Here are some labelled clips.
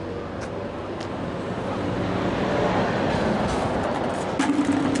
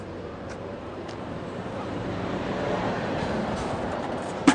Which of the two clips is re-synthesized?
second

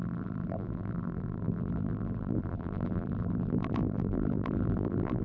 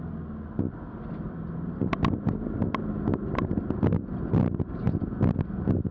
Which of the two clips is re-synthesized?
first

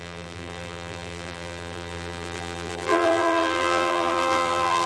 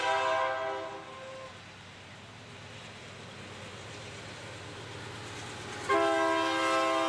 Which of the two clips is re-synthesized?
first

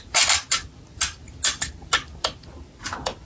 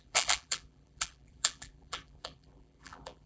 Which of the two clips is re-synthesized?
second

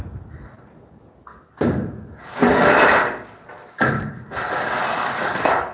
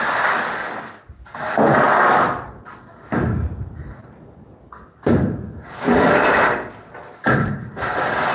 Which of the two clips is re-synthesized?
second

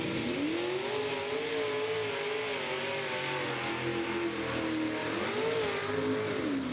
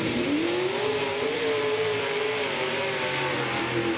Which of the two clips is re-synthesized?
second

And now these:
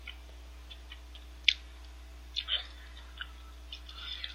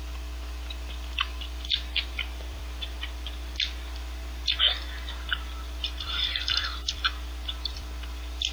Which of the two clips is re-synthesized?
second